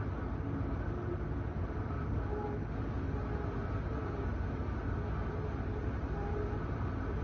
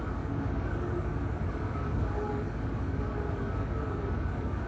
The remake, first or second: second